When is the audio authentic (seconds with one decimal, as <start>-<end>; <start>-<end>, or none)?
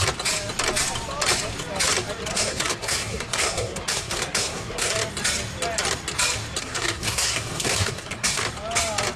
0.0-2.3; 4.9-6.6; 8.4-9.2